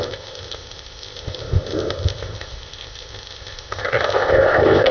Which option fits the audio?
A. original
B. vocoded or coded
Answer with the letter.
B